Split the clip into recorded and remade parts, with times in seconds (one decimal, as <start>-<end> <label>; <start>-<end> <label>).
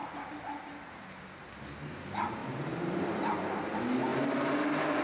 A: 0.0-5.0 recorded